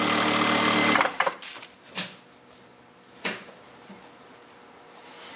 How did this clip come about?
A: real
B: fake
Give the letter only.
A